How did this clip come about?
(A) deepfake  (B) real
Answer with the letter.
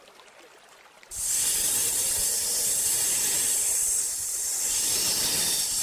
A